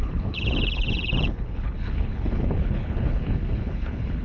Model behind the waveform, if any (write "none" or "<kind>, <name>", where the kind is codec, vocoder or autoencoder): codec, HILCodec